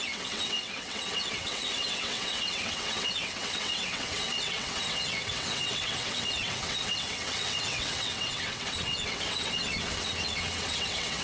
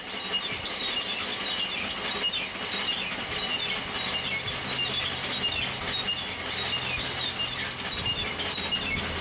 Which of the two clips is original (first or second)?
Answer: second